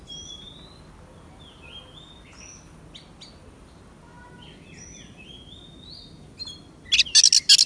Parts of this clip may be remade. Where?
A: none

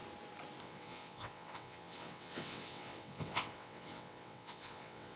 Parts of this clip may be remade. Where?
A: 0.6-5.2 (vocoder, WaveNeXt)

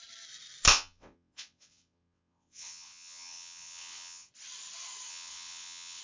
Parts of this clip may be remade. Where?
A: 0.7-4.3 (vocoder, WaveNeXt); 5.1-6.0

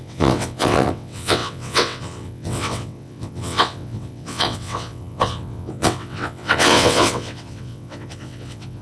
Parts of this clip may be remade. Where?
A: 0.0-8.8 (vocoder, WaveNeXt)

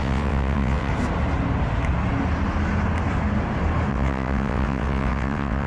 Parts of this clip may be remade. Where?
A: 0.0-0.9 (vocoder, WaveNeXt); 3.9-5.7

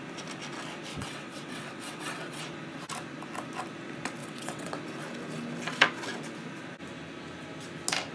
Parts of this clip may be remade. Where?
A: 0.9-2.4 (vocoder, WaveNeXt); 4.2-4.8

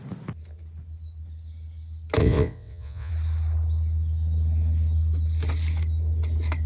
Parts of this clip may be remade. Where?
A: 2.2-3.1 (vocoder, WaveNeXt)